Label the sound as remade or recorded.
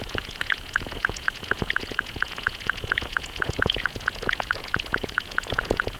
remade